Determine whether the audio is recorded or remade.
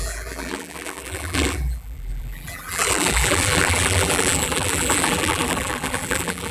remade